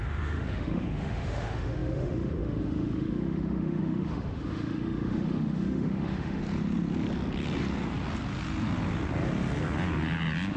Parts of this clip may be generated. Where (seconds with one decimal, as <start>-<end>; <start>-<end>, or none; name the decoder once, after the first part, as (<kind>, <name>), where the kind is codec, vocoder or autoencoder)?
0.0-6.4 (autoencoder, DAC-VAE)